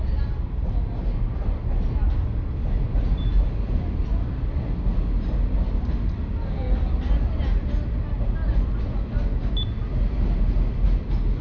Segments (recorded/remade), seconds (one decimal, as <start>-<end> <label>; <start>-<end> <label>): 0.0-8.5 recorded; 8.5-9.4 remade; 9.4-11.4 recorded